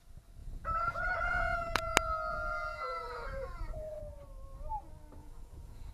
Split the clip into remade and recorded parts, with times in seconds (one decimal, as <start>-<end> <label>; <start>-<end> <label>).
0.0-0.4 recorded; 0.4-0.9 remade; 0.9-1.3 recorded; 1.3-1.8 remade; 1.8-2.3 recorded; 2.3-4.0 remade; 4.0-5.2 recorded; 5.2-5.9 remade